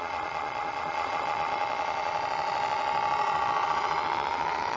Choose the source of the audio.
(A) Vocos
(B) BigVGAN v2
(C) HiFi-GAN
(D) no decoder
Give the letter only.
A